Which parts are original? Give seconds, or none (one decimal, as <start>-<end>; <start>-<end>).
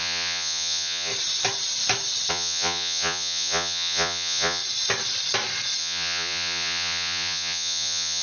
1.1-2.3; 4.6-5.8